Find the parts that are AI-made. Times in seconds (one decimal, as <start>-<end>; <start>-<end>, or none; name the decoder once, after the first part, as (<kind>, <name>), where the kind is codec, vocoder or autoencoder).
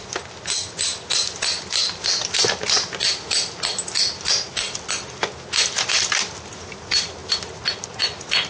none